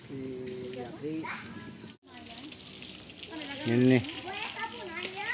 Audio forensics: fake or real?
real